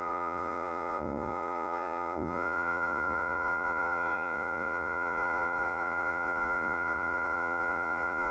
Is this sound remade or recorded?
remade